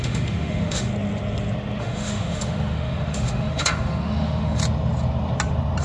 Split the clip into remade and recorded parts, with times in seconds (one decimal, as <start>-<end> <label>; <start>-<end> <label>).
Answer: 0.0-0.9 remade; 0.9-1.8 recorded; 1.8-4.6 remade; 4.6-5.8 recorded